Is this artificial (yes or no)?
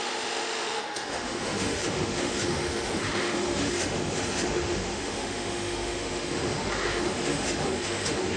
yes